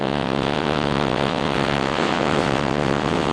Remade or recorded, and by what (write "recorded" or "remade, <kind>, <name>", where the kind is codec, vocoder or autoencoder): remade, vocoder, WaveNeXt